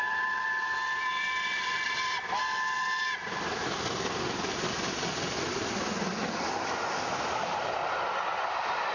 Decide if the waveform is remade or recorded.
recorded